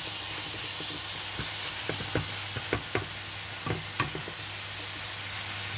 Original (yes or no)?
yes